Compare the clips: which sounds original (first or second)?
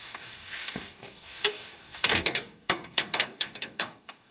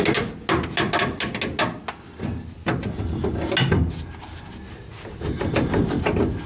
second